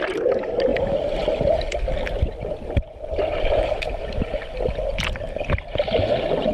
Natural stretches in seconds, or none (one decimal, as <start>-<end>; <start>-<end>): 0.0-0.7; 4.0-6.5

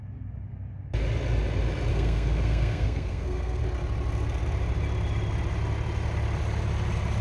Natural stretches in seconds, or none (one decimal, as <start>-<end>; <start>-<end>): 0.0-1.9; 3.6-7.2

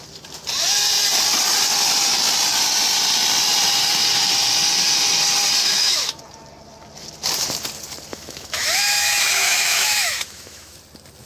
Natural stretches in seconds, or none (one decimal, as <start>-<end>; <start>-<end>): 0.0-5.6; 6.2-8.1; 10.8-11.3

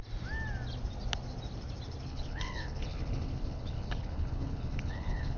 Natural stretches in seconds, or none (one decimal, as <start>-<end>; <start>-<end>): 0.0-2.1

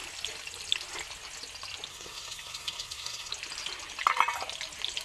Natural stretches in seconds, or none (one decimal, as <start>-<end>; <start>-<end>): 0.0-1.9; 3.3-5.0

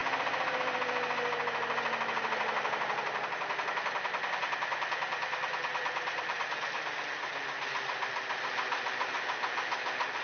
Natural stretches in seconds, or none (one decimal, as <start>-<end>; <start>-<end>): 0.0-10.2